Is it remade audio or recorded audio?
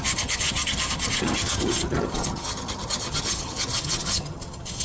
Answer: remade